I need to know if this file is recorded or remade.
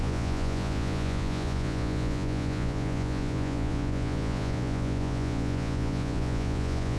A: remade